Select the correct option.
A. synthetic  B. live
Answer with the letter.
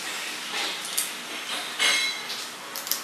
B